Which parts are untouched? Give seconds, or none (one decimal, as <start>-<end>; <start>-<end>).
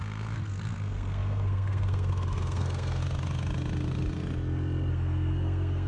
3.0-4.9